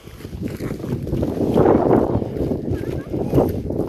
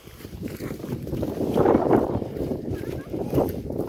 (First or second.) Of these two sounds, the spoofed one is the second